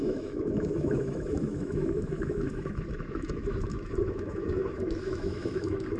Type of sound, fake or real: fake